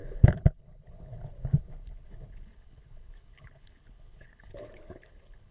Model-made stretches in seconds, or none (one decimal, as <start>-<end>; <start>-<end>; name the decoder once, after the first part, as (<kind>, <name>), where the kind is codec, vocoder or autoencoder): 0.0-5.5 (codec, HILCodec)